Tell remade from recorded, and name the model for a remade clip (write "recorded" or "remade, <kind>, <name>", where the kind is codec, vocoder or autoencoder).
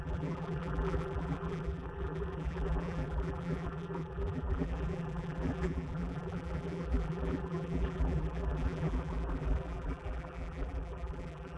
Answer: remade, vocoder, BigVGAN v2